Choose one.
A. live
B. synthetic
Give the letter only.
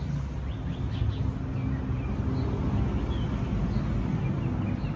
A